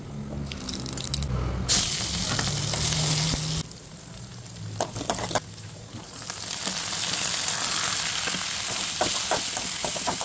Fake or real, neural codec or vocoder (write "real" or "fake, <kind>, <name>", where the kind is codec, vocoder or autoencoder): real